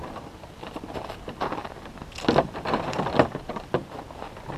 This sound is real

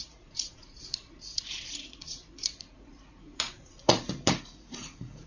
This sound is fake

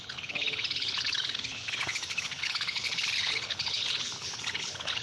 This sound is fake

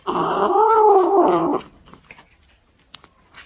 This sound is real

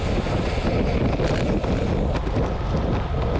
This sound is real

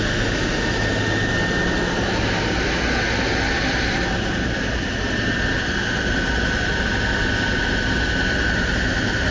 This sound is real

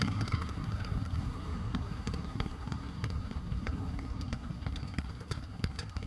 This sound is fake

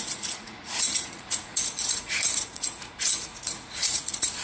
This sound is fake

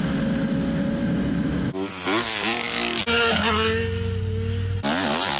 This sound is real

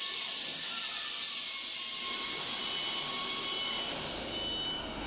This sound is real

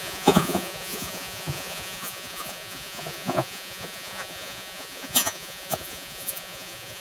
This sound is fake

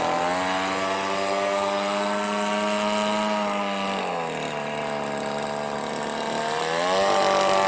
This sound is real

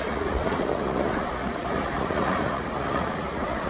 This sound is fake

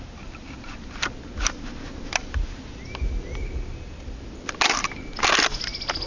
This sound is real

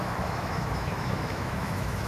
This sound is fake